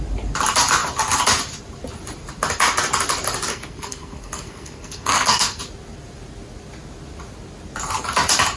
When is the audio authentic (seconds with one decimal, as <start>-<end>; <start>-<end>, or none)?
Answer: 0.0-3.5; 5.6-8.6